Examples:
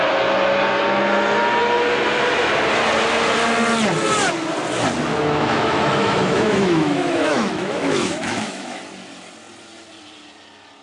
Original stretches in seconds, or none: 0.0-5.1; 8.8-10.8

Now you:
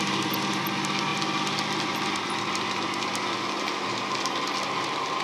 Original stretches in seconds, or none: 0.0-5.2

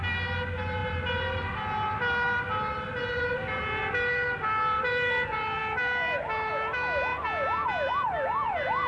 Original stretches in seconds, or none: 0.0-8.9

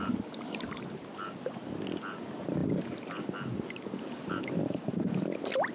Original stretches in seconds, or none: 0.0-5.7

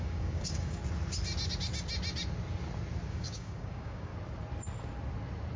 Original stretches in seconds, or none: 0.8-3.1; 4.1-5.6

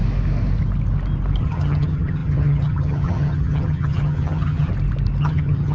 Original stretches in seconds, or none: 0.0-1.4; 4.7-5.2